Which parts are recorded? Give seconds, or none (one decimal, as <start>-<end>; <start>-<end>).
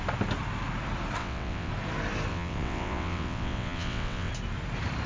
0.0-1.2; 1.7-2.3; 4.3-5.1